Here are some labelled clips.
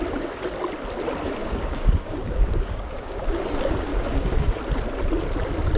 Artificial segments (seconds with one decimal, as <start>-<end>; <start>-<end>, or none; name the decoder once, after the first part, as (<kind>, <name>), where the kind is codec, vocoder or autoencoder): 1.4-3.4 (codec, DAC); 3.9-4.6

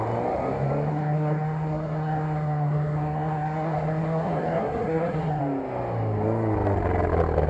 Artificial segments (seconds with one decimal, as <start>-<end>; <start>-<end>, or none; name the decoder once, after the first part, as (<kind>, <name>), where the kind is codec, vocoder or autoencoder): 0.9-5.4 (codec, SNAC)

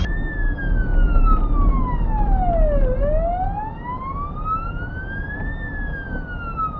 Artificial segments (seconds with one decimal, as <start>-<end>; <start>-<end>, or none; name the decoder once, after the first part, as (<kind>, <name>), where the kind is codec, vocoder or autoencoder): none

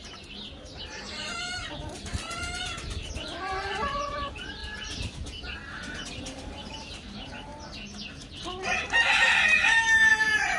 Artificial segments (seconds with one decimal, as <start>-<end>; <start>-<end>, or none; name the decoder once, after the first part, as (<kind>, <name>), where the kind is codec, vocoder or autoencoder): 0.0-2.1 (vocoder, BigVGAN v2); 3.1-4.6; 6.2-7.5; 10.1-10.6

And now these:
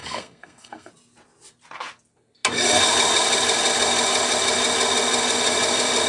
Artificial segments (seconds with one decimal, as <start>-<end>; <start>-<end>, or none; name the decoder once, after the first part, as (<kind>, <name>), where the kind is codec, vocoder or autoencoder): 0.0-0.9 (codec, SNAC)

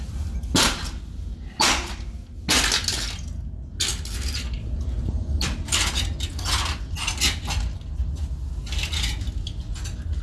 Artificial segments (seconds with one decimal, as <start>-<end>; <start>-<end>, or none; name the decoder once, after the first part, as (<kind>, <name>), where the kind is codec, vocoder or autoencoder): none

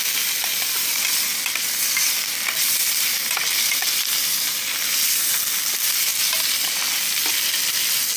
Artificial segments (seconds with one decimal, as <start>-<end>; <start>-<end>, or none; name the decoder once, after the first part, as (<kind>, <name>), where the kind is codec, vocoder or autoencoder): none

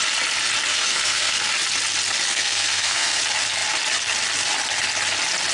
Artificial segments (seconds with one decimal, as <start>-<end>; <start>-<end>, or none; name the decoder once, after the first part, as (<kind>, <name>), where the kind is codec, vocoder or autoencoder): 0.7-1.5 (codec, SNAC); 2.3-3.2